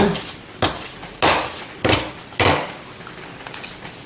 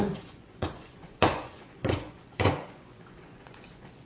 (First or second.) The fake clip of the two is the second